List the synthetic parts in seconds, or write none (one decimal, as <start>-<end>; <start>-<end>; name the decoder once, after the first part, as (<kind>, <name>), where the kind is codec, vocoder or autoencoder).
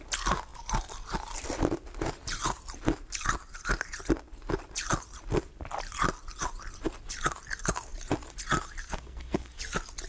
8.8-9.6 (codec, SNAC)